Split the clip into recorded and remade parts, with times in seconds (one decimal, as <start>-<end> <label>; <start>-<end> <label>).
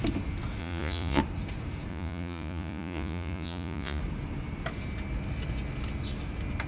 0.0-0.6 recorded; 0.6-1.2 remade; 1.2-1.9 recorded; 1.9-4.0 remade; 4.0-6.7 recorded